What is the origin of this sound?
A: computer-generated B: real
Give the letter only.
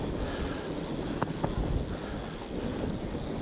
B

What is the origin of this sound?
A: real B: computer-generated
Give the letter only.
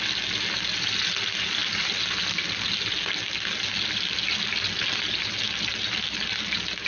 A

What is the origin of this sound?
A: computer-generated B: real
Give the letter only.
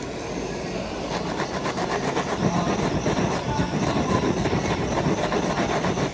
B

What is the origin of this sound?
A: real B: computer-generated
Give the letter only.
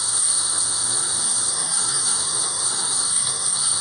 B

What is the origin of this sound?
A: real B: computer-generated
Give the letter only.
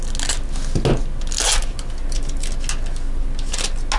A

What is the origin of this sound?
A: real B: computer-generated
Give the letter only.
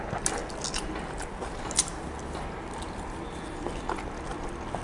A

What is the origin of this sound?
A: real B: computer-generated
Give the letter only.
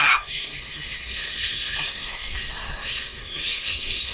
B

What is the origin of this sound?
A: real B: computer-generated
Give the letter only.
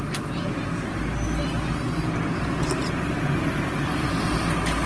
A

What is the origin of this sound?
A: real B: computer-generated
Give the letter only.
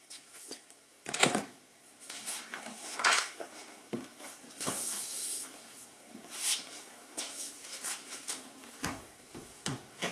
B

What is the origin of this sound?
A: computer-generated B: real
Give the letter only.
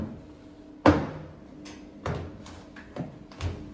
B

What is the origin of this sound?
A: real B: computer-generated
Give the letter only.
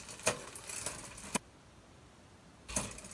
A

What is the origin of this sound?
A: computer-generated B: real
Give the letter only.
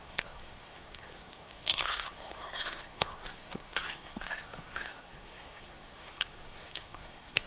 A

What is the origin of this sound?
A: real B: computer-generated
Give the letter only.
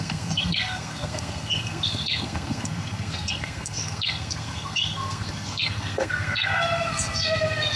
B